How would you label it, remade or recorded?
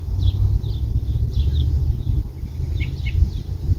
recorded